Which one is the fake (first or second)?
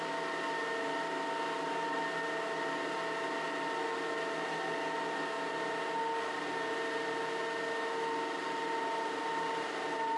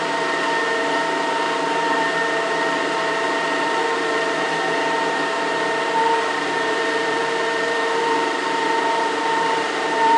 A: second